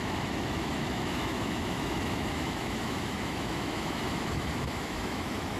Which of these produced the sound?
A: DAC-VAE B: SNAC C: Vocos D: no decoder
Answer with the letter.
A